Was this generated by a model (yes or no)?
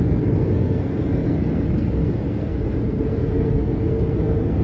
yes